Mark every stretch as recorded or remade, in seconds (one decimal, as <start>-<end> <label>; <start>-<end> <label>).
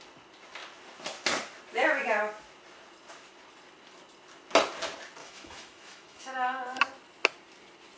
0.0-5.2 recorded; 5.2-6.8 remade; 6.8-8.0 recorded